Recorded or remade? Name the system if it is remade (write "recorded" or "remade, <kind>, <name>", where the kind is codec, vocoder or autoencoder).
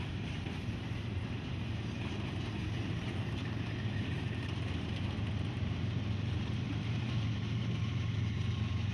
remade, vocoder, BigVGAN v2